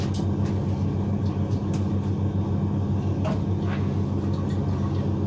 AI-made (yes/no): no